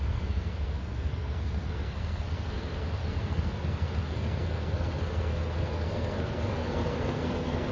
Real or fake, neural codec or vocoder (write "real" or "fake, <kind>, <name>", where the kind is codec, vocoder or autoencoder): fake, codec, SNAC